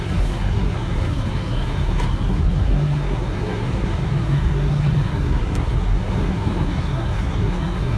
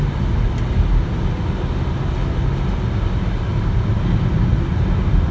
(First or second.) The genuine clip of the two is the second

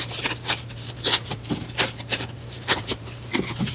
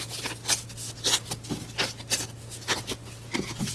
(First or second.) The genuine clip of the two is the second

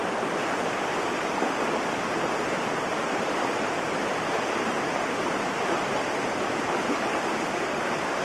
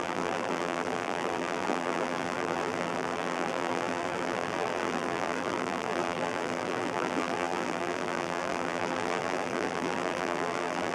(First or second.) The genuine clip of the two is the first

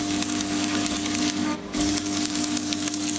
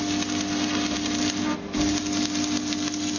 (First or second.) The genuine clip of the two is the second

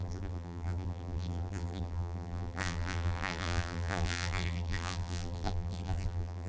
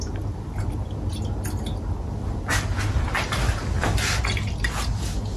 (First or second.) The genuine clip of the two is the second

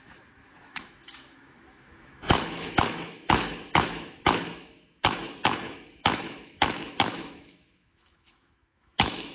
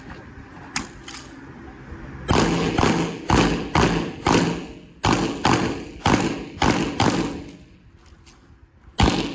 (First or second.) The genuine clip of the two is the second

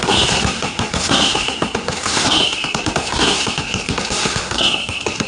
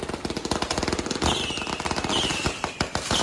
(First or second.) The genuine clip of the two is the second